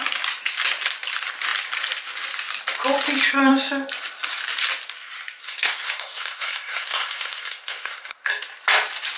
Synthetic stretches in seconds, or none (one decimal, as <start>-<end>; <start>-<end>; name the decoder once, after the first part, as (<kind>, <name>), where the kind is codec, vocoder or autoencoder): 5.4-8.3 (codec, SNAC)